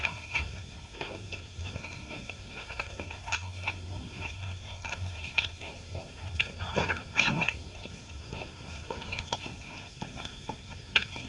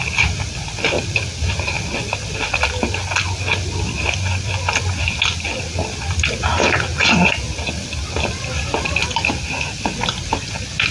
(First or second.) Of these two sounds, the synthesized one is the first